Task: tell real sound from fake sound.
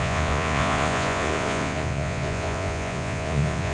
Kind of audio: fake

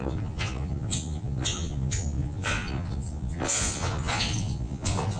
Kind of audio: fake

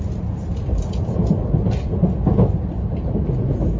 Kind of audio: real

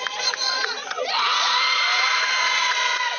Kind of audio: fake